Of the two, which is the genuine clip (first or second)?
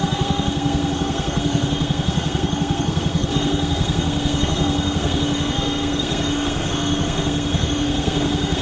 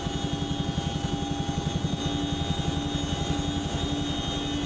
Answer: second